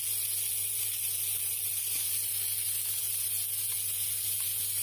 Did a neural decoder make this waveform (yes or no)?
no